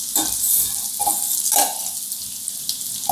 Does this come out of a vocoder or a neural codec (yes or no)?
no